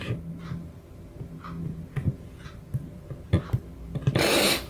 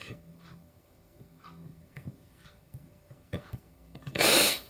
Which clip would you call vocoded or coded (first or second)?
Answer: second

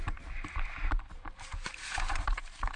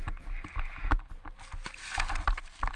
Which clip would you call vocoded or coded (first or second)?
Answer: first